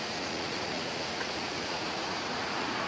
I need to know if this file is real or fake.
fake